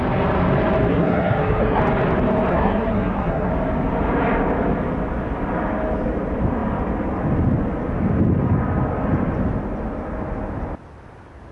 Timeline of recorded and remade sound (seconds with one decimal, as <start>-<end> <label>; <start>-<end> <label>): 0.0-0.9 recorded; 0.9-1.8 remade; 1.8-2.5 recorded; 2.5-3.5 remade; 3.5-11.5 recorded